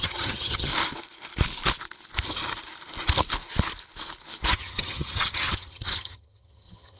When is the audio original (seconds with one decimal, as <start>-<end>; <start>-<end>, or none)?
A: 0.7-4.5